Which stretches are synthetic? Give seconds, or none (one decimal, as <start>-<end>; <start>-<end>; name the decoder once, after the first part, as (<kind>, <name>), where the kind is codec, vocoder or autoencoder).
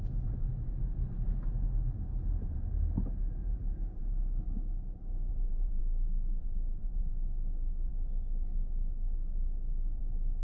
3.4-4.0 (vocoder, BigVGAN v2); 5.3-5.8; 6.4-7.1